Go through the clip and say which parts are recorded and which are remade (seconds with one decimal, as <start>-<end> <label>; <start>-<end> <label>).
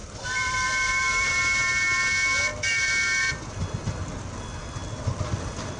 0.0-1.3 remade; 1.3-2.5 recorded; 2.5-3.6 remade; 3.6-4.8 recorded; 4.8-5.8 remade